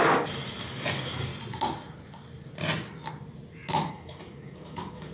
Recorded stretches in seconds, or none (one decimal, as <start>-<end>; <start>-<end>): 1.3-3.9